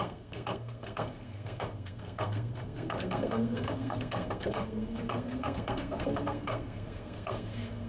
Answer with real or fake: fake